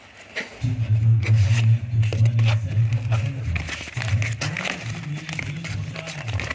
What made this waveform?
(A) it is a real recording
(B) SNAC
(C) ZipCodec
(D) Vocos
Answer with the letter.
A